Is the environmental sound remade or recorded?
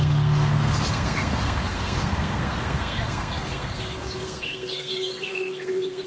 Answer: remade